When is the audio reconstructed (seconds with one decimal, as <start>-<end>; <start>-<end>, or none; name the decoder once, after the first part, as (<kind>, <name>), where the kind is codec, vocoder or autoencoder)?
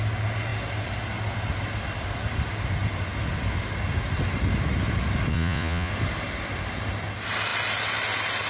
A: 5.3-5.9 (vocoder, Vocos)